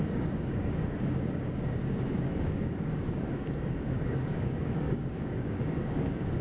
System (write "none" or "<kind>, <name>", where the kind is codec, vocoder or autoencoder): codec, DAC